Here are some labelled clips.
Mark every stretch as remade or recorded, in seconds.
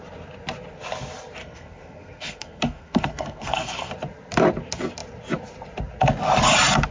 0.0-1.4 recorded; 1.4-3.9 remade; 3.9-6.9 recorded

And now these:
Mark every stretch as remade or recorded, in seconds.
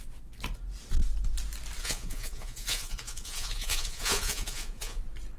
0.0-1.8 recorded; 1.8-5.0 remade; 5.0-5.4 recorded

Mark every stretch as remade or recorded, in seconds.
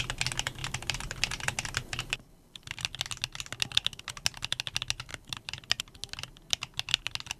0.0-0.6 recorded; 0.6-2.1 remade; 2.1-5.1 recorded; 5.1-5.8 remade; 5.8-7.4 recorded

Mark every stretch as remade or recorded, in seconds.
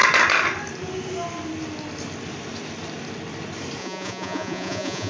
0.0-3.8 recorded; 3.8-5.1 remade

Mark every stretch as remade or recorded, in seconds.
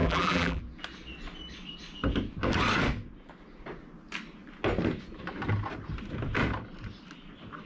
0.0-0.6 remade; 0.6-7.7 recorded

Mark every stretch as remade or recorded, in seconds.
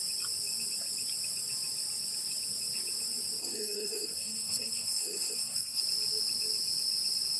0.0-3.4 recorded; 3.4-5.8 remade; 5.8-7.4 recorded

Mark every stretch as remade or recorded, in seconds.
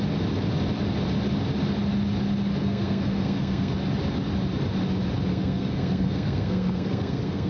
0.0-2.6 recorded; 2.6-3.7 remade; 3.7-5.3 recorded; 5.3-7.5 remade